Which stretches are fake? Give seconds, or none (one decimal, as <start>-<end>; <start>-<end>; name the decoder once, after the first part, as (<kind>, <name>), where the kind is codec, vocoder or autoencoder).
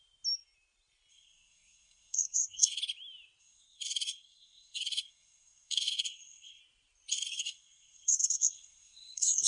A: 1.1-2.8 (codec, SNAC); 3.4-6.6; 7.1-9.5